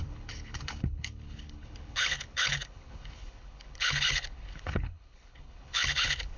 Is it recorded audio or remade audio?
remade